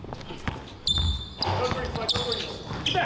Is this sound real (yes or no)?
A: yes